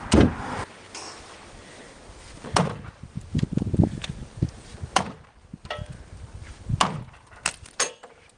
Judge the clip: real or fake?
real